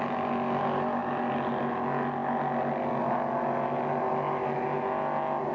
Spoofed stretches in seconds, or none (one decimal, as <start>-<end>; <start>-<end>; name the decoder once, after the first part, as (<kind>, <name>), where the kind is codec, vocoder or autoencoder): none